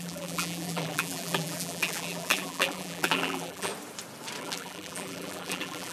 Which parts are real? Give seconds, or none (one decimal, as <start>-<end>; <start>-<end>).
3.7-4.4